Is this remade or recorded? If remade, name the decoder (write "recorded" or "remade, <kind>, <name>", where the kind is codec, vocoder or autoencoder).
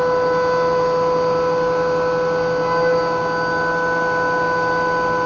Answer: recorded